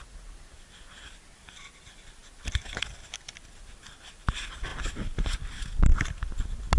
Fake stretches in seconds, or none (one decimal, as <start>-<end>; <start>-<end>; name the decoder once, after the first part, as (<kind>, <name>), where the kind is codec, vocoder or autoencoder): none